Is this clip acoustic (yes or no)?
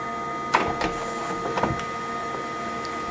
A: yes